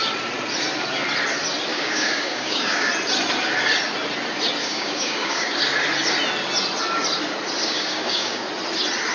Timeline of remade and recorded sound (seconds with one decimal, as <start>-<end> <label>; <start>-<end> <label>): 0.0-1.7 recorded; 1.7-2.9 remade; 2.9-4.6 recorded; 4.6-5.5 remade; 5.5-7.6 recorded; 7.6-8.4 remade; 8.4-9.1 recorded

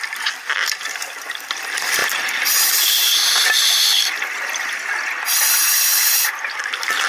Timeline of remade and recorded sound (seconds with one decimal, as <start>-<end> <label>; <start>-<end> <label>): 0.0-7.1 recorded

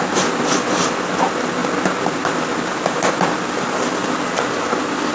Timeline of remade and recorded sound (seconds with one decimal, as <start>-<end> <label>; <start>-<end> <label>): 0.0-5.1 recorded

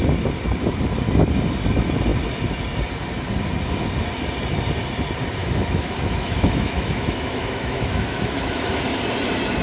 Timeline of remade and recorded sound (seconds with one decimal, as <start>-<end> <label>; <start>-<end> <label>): 0.0-5.4 recorded; 5.4-8.7 remade; 8.7-9.6 recorded

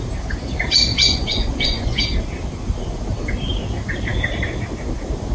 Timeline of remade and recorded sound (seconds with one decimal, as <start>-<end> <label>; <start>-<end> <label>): 0.0-0.9 recorded; 0.9-2.0 remade; 2.0-5.3 recorded

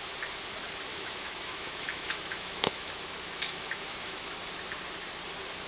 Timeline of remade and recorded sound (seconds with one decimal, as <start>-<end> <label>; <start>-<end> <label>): 0.0-0.9 recorded; 0.9-4.3 remade; 4.3-5.7 recorded

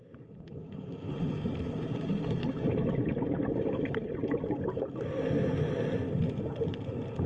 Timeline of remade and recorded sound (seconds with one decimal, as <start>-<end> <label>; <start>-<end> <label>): 0.0-0.8 remade; 0.8-2.1 recorded; 2.1-4.2 remade; 4.2-7.3 recorded